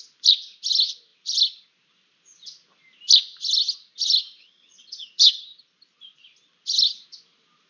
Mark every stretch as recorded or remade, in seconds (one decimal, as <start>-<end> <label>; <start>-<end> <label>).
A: 0.0-4.4 recorded; 4.4-5.4 remade; 5.4-7.7 recorded